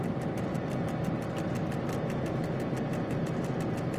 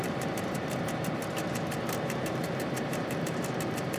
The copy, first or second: second